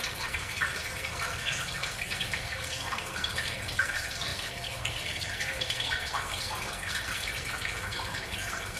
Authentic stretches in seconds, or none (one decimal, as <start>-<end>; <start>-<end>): none